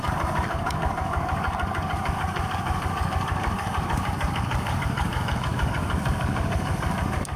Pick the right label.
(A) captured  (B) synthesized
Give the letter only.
B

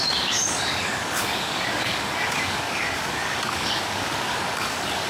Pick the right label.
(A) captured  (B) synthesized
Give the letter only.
B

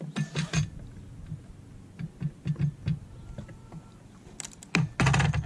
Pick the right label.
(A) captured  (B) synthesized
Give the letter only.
A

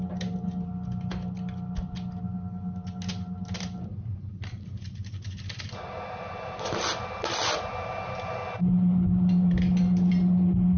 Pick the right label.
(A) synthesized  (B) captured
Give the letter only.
B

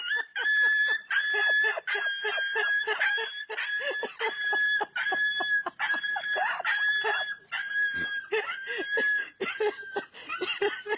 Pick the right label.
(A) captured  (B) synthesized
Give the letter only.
A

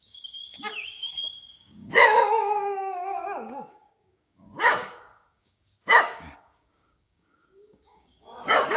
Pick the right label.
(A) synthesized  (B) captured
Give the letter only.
A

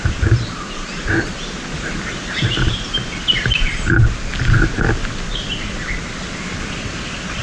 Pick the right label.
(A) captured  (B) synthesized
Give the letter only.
A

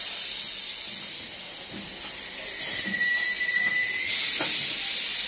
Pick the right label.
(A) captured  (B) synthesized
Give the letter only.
A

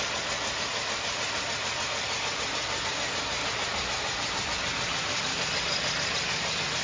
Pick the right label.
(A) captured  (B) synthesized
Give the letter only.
A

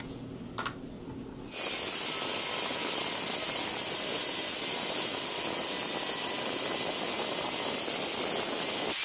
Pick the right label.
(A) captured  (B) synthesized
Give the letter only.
A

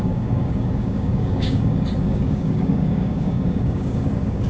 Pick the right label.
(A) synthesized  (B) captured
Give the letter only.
A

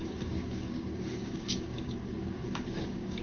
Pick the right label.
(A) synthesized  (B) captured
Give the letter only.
A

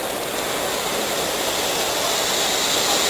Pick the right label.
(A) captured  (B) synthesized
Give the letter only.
A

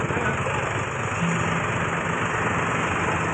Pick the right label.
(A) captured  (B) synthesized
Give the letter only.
A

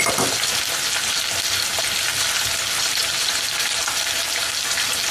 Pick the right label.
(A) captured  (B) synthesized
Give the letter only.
A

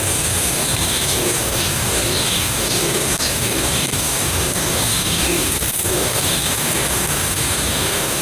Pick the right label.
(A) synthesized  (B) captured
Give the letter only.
A